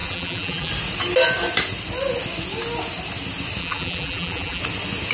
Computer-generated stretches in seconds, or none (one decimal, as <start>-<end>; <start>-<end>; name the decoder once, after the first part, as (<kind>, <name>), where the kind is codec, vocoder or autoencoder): 0.0-0.7 (vocoder, BigVGAN v2); 3.6-4.6